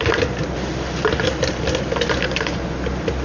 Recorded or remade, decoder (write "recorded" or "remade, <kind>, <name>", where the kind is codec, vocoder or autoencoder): recorded